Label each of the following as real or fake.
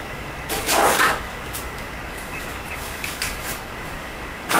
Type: fake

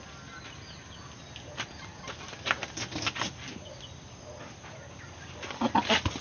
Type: real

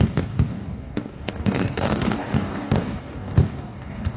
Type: fake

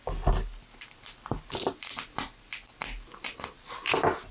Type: real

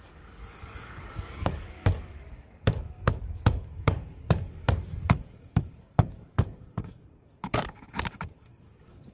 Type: fake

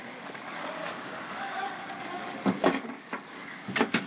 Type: fake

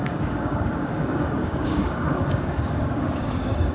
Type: fake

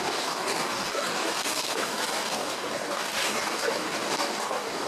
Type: fake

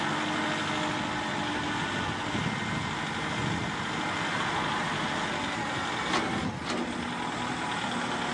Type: real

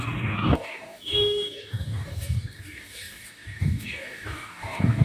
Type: fake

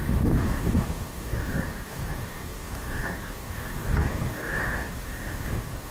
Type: fake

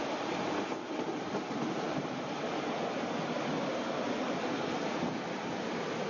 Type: real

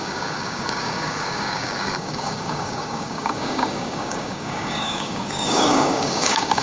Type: fake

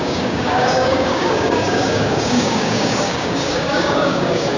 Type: fake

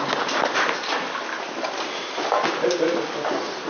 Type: real